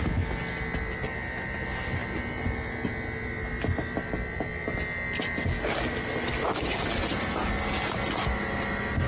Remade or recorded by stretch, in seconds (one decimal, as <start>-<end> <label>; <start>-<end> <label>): 0.0-7.0 recorded; 7.0-7.5 remade; 7.5-9.1 recorded